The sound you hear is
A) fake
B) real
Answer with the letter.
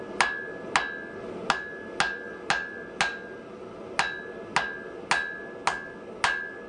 B